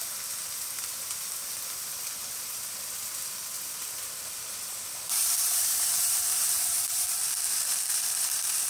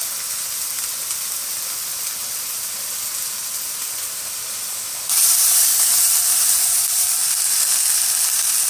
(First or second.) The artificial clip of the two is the first